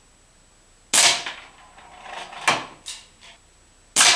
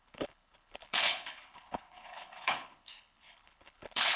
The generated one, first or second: second